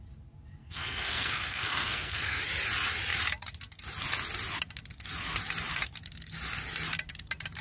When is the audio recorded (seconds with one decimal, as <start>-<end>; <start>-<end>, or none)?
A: 0.0-0.6; 2.4-7.6